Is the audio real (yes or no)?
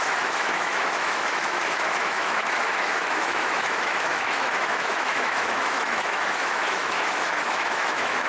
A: no